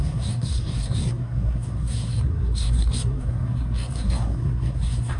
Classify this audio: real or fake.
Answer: fake